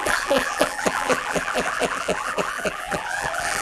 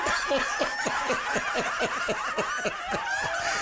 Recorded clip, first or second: second